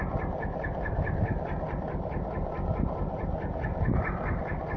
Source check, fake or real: real